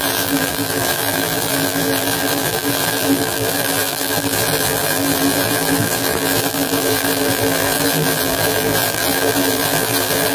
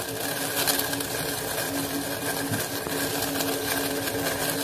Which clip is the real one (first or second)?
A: second